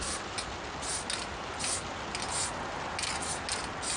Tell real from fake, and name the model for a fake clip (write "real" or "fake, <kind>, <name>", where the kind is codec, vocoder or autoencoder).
real